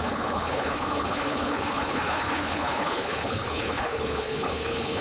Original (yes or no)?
no